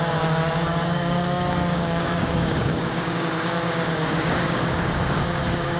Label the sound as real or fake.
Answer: fake